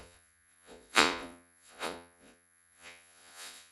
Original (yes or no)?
no